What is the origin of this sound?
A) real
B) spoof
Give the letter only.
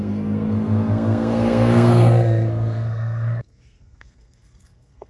B